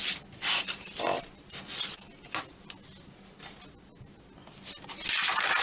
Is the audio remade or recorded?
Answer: recorded